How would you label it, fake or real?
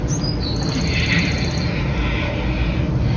real